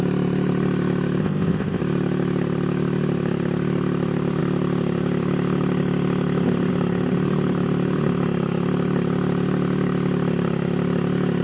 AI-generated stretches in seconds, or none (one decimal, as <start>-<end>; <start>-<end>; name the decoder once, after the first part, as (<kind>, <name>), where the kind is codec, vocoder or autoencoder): 1.2-1.8 (codec, ZipCodec)